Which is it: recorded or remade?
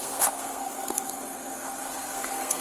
remade